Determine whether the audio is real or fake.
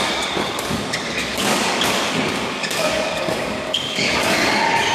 fake